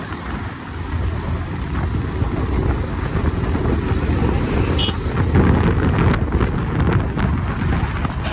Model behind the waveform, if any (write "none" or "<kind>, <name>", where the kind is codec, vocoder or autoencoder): none